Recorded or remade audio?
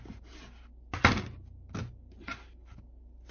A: recorded